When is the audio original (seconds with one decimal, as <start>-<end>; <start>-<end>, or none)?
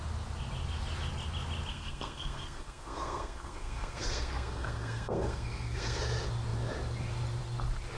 0.0-1.7; 6.0-8.0